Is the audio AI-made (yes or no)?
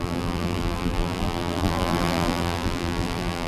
yes